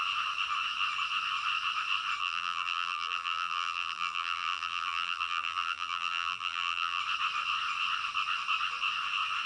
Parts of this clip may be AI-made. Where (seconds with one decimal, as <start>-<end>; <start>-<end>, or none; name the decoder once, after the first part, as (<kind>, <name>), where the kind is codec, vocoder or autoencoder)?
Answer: 2.2-7.0 (vocoder, BigVGAN v2)